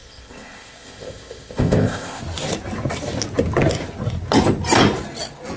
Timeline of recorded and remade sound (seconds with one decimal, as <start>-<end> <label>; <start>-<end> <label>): 0.0-2.2 remade; 2.2-5.6 recorded